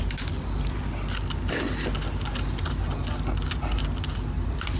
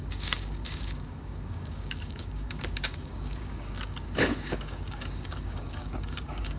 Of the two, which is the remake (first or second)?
second